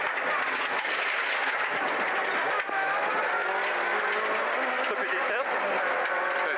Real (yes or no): yes